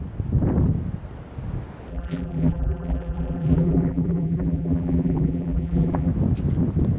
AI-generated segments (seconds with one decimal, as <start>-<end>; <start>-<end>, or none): 1.9-6.1